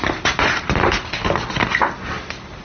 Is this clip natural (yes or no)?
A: yes